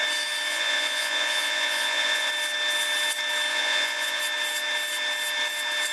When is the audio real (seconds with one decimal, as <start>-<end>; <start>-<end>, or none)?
0.0-0.5; 2.3-3.5; 4.2-5.9